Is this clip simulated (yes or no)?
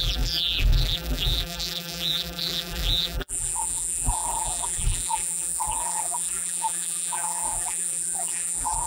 yes